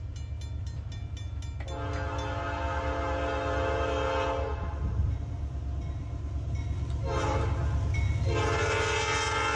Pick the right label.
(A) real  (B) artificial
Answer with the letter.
A